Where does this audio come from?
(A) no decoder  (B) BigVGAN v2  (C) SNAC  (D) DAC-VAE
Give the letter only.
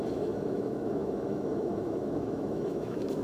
D